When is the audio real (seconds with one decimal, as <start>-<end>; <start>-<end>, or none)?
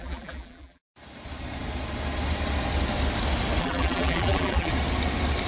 0.8-3.6; 4.7-5.5